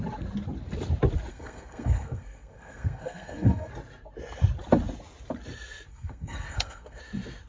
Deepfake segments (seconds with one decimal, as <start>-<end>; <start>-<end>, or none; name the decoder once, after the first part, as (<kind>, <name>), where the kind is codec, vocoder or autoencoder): 1.3-3.7 (codec, SNAC); 5.9-7.0